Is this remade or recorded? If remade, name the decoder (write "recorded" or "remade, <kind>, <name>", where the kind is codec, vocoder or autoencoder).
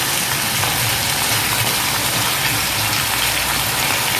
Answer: recorded